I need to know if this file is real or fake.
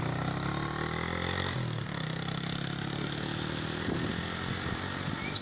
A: real